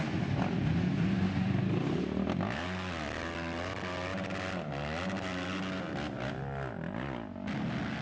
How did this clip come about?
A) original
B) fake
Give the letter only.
A